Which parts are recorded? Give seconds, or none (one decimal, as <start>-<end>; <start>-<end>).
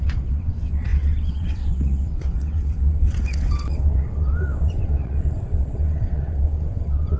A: none